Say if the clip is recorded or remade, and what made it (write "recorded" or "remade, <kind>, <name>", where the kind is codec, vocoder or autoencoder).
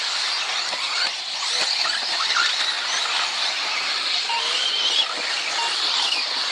recorded